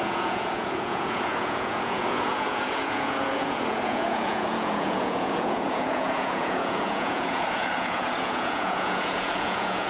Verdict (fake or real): fake